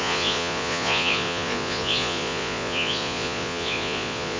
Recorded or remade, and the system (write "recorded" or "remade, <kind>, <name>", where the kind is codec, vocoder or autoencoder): remade, vocoder, Vocos